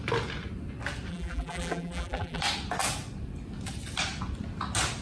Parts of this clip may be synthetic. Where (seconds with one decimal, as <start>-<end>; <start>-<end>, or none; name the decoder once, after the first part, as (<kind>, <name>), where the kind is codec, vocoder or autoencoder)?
1.1-2.4 (vocoder, BigVGAN v2)